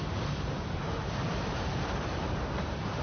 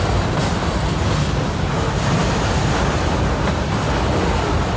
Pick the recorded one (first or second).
second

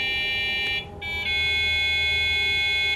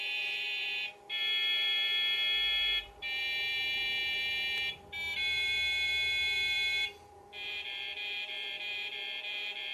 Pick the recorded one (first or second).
first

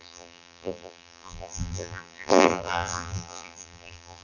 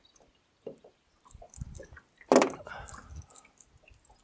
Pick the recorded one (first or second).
second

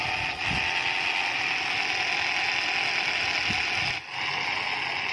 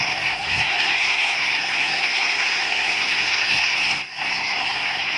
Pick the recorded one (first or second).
first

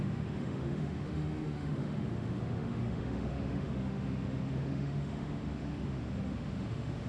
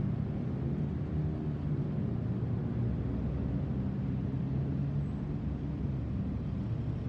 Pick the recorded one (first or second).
second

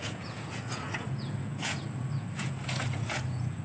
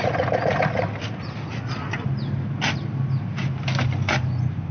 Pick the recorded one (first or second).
second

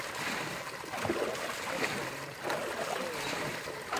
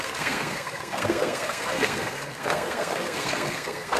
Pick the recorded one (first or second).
first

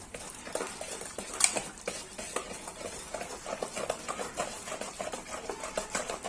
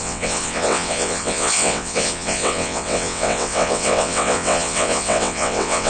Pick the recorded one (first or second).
first